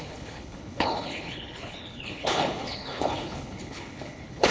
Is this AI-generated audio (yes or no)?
yes